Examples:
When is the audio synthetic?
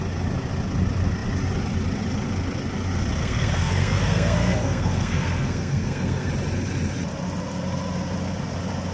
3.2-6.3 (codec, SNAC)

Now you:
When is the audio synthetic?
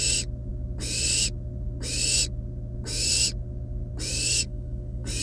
4.1-5.2 (codec, DAC)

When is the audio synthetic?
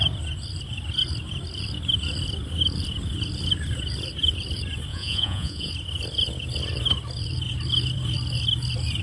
4.9-5.7 (vocoder, Vocos)